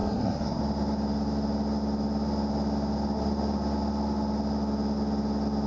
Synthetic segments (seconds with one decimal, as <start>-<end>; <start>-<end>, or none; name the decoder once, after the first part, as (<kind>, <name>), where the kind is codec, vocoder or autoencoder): 0.0-0.6 (codec, SNAC)